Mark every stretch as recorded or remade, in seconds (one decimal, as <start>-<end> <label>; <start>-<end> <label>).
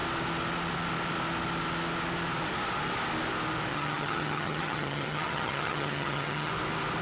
0.0-3.7 recorded; 3.7-6.5 remade; 6.5-7.0 recorded